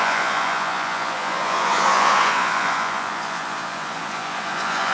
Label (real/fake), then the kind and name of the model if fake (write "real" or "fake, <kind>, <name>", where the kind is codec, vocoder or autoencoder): fake, vocoder, Vocos